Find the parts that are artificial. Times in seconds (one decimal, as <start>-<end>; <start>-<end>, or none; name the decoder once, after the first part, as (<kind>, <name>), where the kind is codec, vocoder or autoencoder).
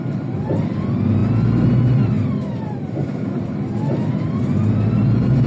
none